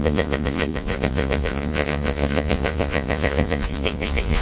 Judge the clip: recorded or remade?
remade